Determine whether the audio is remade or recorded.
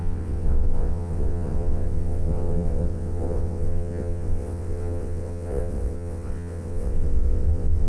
remade